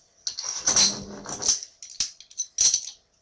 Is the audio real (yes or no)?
yes